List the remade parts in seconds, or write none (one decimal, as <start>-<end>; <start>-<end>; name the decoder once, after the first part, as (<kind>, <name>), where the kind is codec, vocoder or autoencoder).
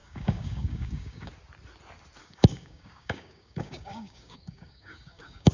0.0-1.3 (codec, DAC); 2.2-5.5